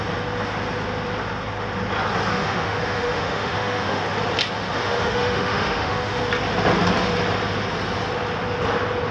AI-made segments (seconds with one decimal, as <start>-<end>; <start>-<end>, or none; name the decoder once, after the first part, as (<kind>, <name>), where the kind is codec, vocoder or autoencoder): 2.3-4.0 (autoencoder, DAC-VAE); 4.8-6.2

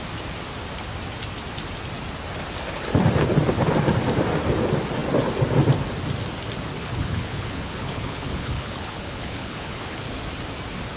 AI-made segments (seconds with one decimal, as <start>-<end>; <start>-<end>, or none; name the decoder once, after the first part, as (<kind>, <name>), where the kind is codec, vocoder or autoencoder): 6.8-10.2 (codec, HILCodec)